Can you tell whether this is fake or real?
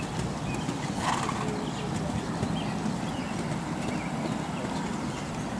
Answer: real